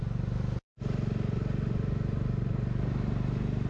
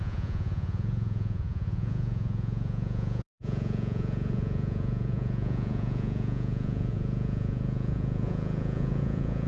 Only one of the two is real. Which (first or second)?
first